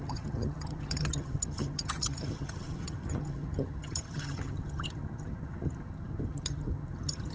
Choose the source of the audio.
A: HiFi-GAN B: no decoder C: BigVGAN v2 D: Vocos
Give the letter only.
A